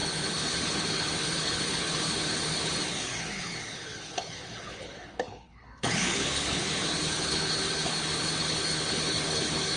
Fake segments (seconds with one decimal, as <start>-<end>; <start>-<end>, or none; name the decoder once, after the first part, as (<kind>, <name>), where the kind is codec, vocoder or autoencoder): 0.0-9.8 (codec, HILCodec)